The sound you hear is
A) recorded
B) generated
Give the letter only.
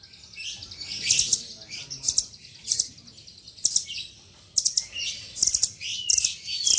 A